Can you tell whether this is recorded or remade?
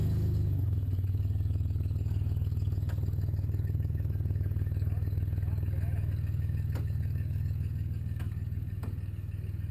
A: remade